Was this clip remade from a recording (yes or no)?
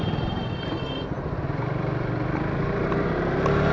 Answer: no